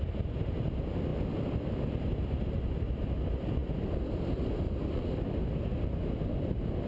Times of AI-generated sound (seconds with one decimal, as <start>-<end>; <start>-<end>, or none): none